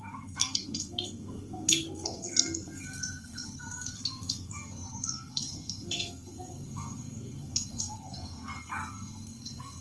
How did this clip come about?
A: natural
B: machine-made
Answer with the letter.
B